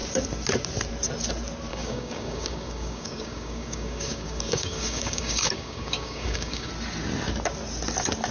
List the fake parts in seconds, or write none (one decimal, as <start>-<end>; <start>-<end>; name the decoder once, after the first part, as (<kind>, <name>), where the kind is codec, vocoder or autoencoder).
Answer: 1.7-6.7 (codec, DAC)